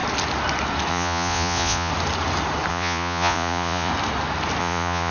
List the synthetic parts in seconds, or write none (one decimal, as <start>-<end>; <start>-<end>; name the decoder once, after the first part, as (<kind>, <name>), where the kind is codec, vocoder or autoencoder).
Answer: 0.9-1.9 (vocoder, Vocos); 2.7-3.9; 4.6-5.1